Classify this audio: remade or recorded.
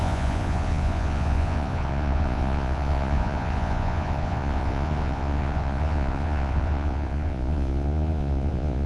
remade